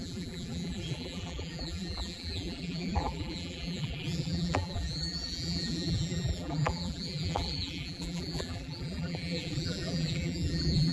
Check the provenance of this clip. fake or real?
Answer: fake